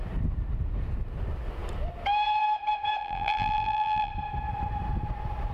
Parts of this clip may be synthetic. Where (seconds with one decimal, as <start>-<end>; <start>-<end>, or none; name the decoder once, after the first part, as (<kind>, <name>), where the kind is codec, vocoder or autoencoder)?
3.0-4.1 (vocoder, BigVGAN v2)